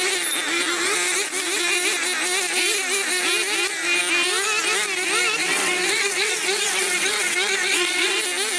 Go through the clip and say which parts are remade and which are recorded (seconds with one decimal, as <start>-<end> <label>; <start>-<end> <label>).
0.0-5.4 recorded; 5.4-8.2 remade; 8.2-8.6 recorded